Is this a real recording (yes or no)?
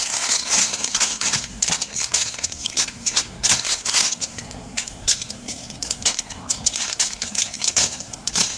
no